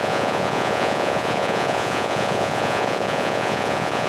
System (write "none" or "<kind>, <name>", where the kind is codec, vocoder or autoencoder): vocoder, Vocos